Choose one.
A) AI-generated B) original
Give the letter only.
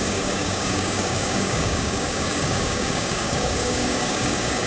A